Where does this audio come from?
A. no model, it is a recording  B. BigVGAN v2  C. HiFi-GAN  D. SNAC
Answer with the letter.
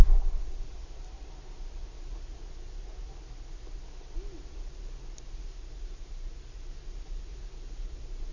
A